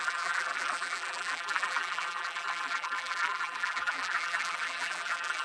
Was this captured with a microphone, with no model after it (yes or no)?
no